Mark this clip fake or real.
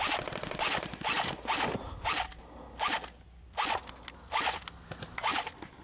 real